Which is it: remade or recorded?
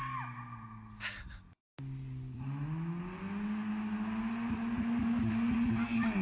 recorded